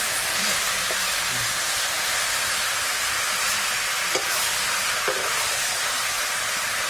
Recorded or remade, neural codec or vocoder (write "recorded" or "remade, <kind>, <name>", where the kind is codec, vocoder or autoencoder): recorded